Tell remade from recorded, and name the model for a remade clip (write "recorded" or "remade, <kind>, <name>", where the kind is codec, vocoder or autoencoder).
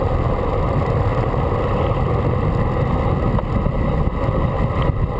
recorded